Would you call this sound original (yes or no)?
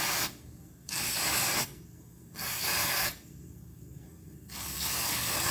no